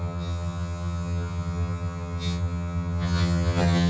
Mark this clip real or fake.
fake